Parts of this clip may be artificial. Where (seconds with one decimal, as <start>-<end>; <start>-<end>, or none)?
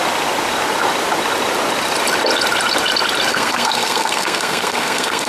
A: 3.3-5.3